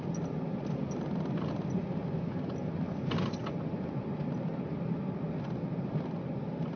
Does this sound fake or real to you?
real